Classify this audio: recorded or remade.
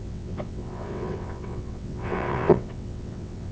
remade